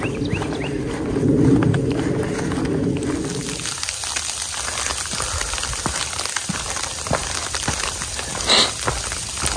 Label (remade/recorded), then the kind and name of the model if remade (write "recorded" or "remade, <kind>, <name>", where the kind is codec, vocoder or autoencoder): recorded